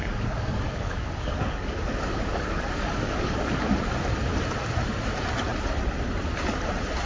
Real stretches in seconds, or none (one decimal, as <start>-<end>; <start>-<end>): 3.7-7.1